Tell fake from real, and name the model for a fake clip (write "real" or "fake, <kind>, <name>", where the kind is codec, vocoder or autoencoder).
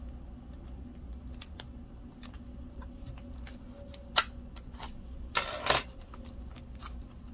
real